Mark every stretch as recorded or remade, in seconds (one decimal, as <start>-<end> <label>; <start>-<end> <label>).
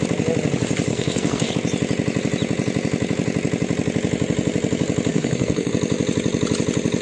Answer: 0.0-0.9 recorded; 0.9-1.5 remade; 1.5-5.1 recorded; 5.1-5.7 remade; 5.7-7.0 recorded